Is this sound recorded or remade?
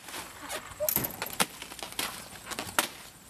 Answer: recorded